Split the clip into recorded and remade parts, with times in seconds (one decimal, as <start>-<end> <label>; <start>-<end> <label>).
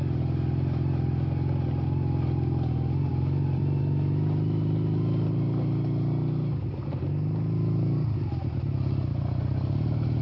0.0-3.1 recorded; 3.1-3.8 remade; 3.8-10.2 recorded